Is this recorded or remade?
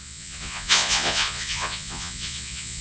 remade